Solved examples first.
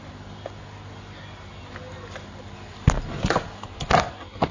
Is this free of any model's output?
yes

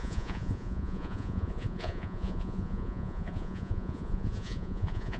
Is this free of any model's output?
no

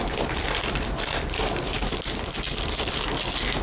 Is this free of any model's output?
yes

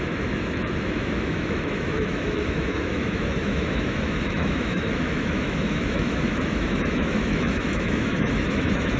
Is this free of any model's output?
no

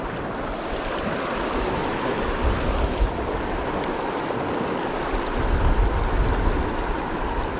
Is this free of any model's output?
yes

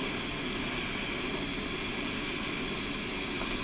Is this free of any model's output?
yes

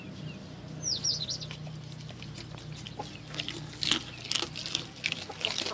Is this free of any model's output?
yes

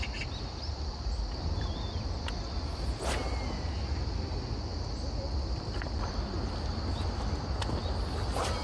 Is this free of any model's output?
yes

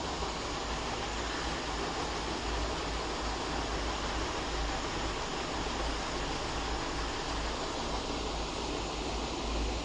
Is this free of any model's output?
yes